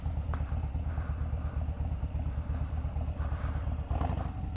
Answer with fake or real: real